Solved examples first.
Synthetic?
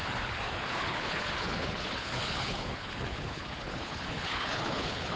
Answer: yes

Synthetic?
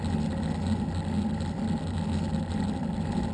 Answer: no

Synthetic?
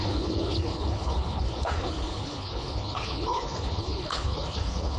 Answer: yes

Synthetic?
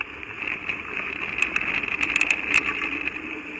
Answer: no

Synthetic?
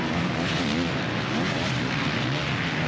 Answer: no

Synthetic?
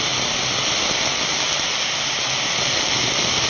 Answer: no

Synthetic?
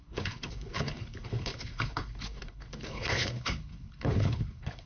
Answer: yes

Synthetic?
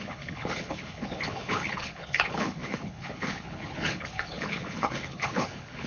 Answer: yes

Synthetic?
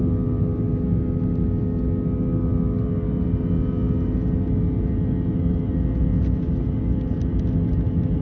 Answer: no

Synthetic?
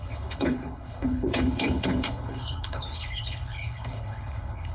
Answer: yes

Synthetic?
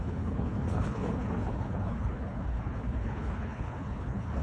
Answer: yes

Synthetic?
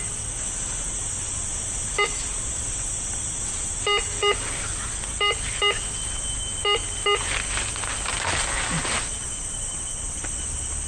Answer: no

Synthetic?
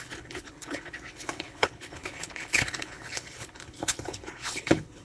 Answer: yes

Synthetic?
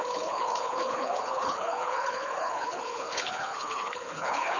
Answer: yes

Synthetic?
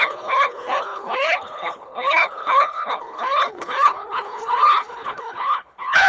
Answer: yes